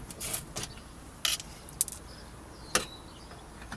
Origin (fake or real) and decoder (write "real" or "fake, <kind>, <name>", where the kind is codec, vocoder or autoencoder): real